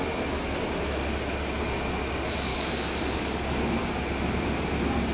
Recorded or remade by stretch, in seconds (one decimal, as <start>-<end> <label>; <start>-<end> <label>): 0.0-2.5 recorded; 2.5-3.7 remade; 3.7-5.1 recorded